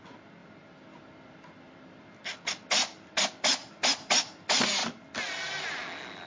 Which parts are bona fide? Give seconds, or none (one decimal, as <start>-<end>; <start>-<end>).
0.0-6.3